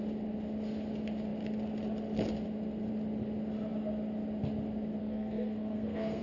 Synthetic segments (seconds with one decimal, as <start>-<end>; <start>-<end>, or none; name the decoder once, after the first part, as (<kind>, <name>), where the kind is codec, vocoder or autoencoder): 5.0-6.2 (codec, SNAC)